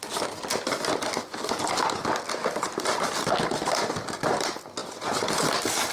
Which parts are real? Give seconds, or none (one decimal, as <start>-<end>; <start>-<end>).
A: 0.0-5.9